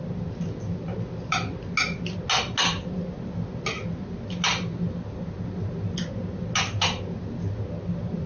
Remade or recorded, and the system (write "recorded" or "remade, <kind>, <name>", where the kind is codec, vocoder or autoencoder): recorded